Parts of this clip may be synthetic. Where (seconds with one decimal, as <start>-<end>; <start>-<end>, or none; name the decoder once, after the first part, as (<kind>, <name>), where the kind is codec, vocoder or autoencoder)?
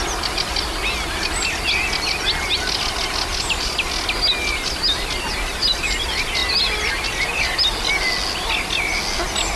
none